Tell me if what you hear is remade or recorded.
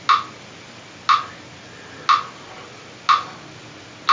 recorded